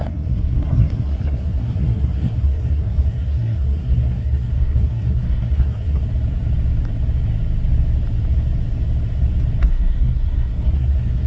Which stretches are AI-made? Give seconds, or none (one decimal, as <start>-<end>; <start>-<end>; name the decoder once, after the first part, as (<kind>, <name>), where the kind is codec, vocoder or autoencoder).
0.0-6.0 (codec, SNAC); 9.6-11.3